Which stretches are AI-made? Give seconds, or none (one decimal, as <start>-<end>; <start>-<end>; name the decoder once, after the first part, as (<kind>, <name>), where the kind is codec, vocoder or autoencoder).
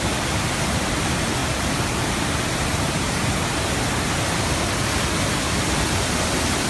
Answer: 1.4-3.9 (vocoder, BigVGAN v2)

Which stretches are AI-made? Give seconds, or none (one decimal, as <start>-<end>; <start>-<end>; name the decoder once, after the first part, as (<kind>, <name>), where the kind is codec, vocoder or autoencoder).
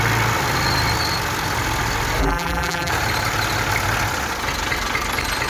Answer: 2.2-2.9 (vocoder, BigVGAN v2)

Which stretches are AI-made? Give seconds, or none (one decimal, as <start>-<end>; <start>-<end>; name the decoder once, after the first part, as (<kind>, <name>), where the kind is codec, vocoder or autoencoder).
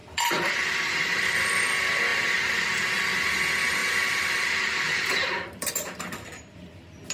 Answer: 0.0-1.4 (vocoder, BigVGAN v2); 2.1-2.9; 3.8-5.7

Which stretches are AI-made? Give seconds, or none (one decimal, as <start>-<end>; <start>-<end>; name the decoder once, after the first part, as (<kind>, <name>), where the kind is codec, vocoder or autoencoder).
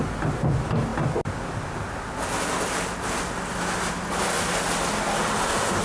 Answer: none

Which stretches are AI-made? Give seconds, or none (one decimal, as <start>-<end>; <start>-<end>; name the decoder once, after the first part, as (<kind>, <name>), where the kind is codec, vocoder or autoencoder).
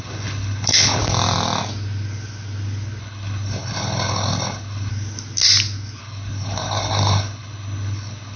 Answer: 0.0-1.0 (codec, HILCodec); 3.0-4.9; 6.0-8.4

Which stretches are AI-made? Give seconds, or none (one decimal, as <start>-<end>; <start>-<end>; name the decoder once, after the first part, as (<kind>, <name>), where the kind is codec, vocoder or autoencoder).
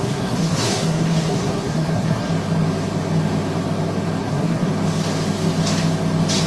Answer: 0.0-2.3 (codec, SNAC); 4.2-4.7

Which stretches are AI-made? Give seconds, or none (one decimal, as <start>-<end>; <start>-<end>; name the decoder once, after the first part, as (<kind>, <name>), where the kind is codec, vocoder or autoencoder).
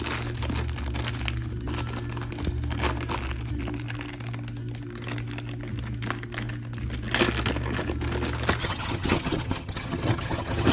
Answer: 8.6-10.7 (vocoder, HiFi-GAN)